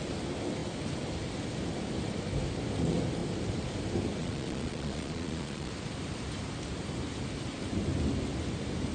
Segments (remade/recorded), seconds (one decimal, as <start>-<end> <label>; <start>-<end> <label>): 0.0-4.2 recorded; 4.2-5.7 remade; 5.7-8.9 recorded